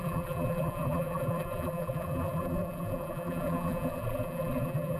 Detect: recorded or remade remade